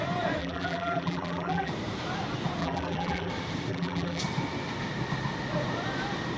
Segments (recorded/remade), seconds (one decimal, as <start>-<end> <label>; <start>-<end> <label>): 0.0-0.4 recorded; 0.4-1.7 remade; 1.7-2.6 recorded; 2.6-3.3 remade; 3.3-3.7 recorded; 3.7-4.2 remade; 4.2-6.4 recorded